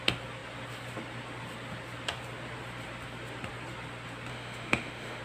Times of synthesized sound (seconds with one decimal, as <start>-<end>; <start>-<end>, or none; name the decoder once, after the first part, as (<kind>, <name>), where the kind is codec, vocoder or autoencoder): 4.3-5.2 (autoencoder, DAC-VAE)